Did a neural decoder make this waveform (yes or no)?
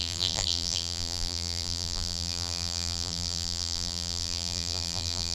yes